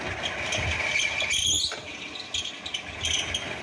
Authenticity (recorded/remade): recorded